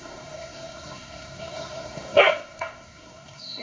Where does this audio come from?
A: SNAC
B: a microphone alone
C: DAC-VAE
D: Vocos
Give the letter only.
A